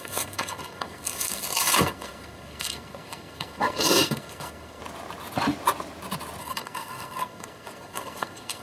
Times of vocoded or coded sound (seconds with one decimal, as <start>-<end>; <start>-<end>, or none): 0.0-4.8; 6.4-8.6